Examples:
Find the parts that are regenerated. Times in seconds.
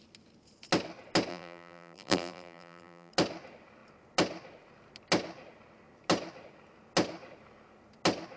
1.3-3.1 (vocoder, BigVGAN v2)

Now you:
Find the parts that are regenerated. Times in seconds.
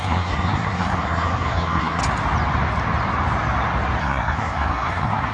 0.0-2.0 (codec, SNAC); 4.0-5.3